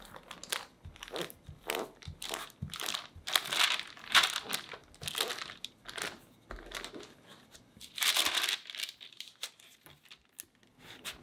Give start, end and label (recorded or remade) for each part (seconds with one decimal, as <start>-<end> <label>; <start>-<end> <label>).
0.0-11.2 recorded